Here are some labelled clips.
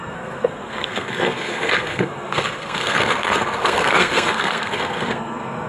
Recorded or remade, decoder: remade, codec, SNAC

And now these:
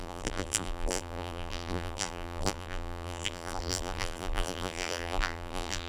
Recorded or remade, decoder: remade, vocoder, BigVGAN v2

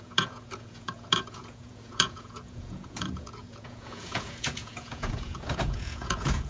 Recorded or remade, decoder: remade, vocoder, Vocos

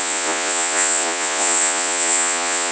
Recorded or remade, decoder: remade, vocoder, Vocos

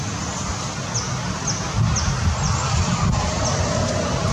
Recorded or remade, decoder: recorded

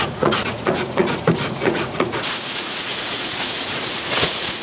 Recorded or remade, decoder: remade, vocoder, Vocos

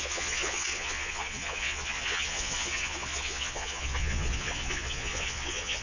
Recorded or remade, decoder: remade, vocoder, Vocos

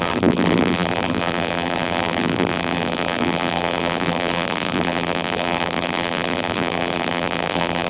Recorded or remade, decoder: remade, vocoder, BigVGAN v2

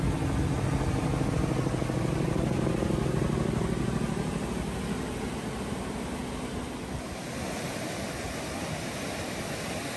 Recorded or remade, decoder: recorded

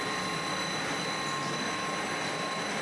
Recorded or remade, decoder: recorded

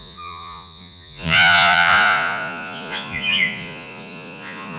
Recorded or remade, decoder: remade, vocoder, Vocos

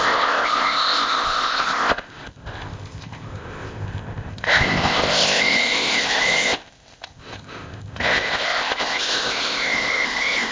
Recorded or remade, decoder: remade, codec, ZipCodec